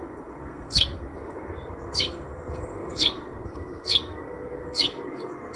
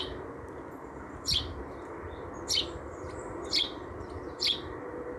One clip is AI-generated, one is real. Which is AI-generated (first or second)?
first